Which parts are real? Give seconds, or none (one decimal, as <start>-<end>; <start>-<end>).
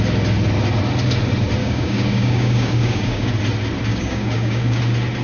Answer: 0.0-1.6; 3.3-3.9; 4.8-5.2